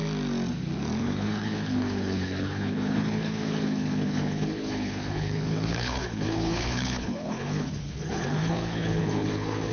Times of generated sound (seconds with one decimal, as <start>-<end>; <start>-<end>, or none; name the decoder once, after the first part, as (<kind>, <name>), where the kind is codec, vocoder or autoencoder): 1.0-9.7 (codec, HILCodec)

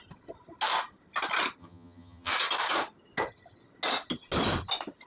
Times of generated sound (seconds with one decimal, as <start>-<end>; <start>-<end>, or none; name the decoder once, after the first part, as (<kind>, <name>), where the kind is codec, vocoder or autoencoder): 1.6-2.3 (vocoder, HiFi-GAN)